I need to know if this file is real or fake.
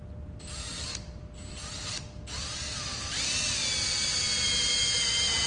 real